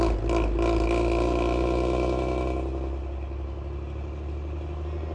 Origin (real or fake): real